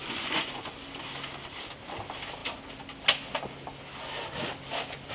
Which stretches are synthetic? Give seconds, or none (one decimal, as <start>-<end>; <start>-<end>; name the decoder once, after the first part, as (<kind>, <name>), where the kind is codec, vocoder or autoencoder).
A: 0.0-0.7 (vocoder, Vocos)